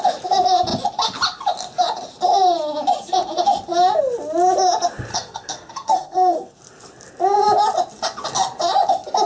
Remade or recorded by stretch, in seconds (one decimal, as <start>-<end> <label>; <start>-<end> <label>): 0.0-5.1 recorded; 5.1-6.5 remade; 6.5-9.3 recorded